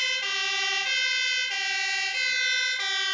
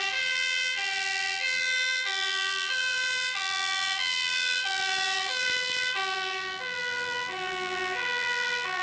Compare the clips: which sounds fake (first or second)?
second